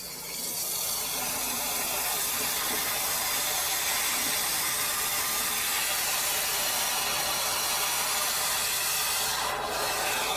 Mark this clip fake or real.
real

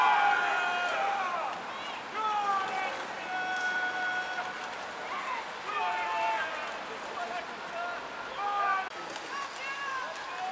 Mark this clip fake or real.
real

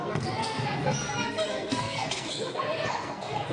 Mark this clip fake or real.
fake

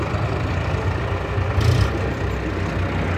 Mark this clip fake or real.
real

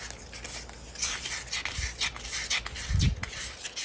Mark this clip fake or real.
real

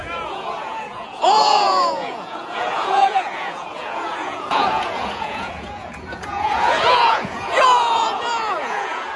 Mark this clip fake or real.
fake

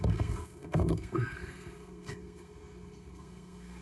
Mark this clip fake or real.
fake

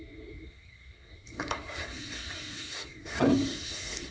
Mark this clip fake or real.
fake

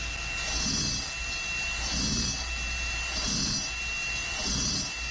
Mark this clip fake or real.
real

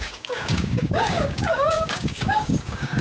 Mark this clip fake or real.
fake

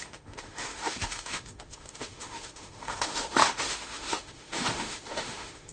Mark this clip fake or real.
fake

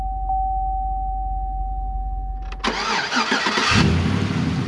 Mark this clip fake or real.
real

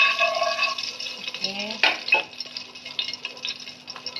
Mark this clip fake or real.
real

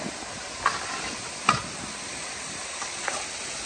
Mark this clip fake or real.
real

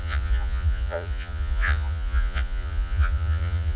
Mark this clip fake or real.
fake